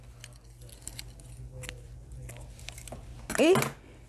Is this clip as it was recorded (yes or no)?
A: yes